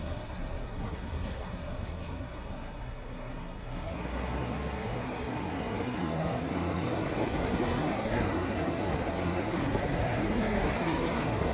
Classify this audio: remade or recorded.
remade